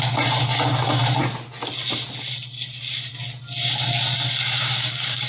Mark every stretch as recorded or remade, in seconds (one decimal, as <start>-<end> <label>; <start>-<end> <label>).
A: 0.0-4.6 recorded; 4.6-5.3 remade